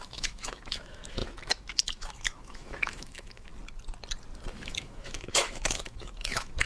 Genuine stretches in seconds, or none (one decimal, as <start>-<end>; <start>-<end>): 3.5-4.5